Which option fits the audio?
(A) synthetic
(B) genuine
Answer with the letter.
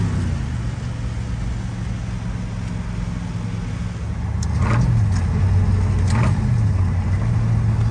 B